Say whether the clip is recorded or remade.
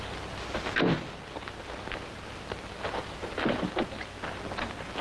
recorded